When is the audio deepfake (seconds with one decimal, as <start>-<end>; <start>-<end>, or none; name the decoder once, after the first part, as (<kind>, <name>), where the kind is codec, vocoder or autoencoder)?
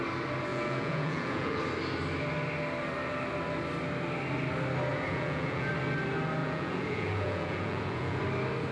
0.5-1.6 (vocoder, Vocos); 4.9-5.7; 6.4-8.2